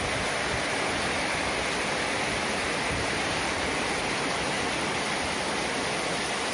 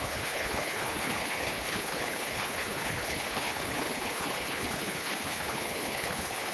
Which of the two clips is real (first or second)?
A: first